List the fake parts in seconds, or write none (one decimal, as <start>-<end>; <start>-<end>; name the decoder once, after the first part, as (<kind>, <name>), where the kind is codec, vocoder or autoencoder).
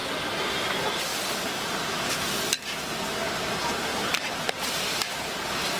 1.1-2.1 (vocoder, BigVGAN v2); 3.9-5.8